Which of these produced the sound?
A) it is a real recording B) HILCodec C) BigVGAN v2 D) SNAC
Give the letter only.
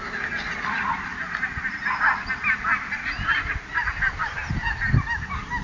A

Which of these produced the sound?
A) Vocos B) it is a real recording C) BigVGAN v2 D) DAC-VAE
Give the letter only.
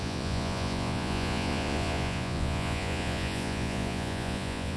A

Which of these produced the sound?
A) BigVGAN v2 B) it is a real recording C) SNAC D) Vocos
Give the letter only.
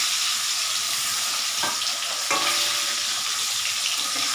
A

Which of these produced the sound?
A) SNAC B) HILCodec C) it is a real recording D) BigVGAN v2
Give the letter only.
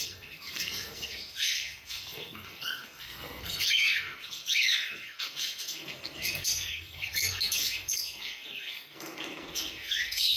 A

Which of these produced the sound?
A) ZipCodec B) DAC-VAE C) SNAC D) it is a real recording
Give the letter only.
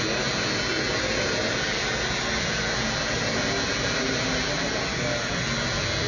D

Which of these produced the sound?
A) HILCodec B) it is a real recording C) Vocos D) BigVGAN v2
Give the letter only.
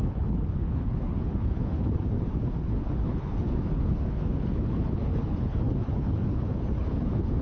A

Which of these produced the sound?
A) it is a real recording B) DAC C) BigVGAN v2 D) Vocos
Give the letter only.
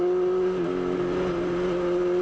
A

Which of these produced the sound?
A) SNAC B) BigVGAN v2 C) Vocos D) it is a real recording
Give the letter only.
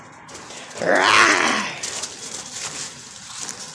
D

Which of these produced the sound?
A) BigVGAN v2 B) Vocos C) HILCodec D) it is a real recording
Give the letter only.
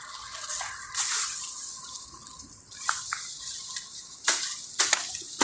D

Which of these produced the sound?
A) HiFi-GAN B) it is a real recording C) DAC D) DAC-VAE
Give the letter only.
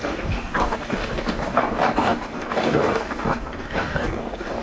C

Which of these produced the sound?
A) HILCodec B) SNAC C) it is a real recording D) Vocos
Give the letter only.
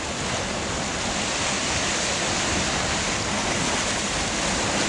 C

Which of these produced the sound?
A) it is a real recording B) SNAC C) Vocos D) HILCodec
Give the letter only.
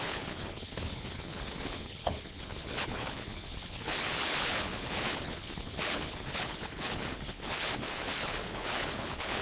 D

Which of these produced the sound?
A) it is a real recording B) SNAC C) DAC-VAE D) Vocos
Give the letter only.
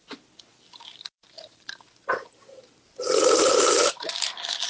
A